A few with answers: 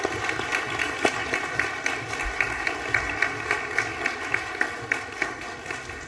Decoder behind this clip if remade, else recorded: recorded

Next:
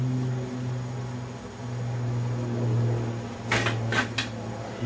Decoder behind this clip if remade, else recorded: recorded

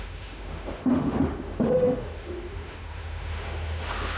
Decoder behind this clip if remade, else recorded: remade, autoencoder, DAC-VAE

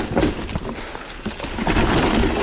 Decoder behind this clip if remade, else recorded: recorded